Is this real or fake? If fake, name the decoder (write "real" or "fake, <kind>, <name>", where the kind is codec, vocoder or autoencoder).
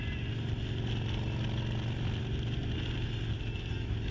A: real